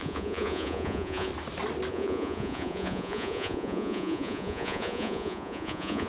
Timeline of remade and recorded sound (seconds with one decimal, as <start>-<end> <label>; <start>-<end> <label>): 0.0-1.3 remade; 1.3-1.9 recorded; 1.9-6.1 remade